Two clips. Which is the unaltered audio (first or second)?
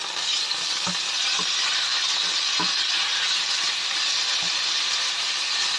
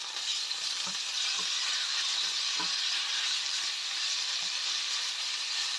first